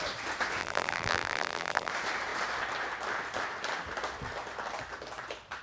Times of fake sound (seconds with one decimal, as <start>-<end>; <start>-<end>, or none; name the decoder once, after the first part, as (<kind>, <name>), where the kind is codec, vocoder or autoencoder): 0.6-1.9 (vocoder, BigVGAN v2)